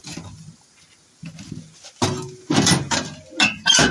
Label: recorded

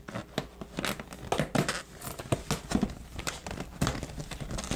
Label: recorded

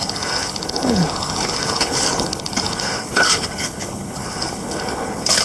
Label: remade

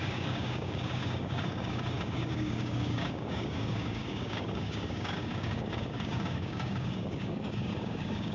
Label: remade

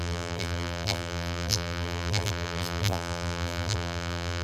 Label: remade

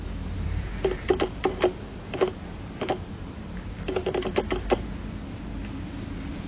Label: remade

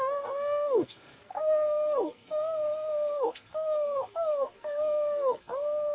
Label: remade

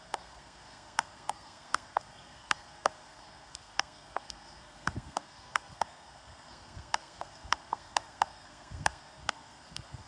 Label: remade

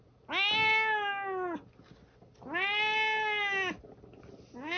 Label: recorded